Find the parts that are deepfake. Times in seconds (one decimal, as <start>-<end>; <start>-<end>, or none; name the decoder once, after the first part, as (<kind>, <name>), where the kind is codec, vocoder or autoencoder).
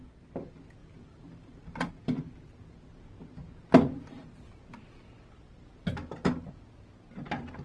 0.8-1.9 (vocoder, BigVGAN v2)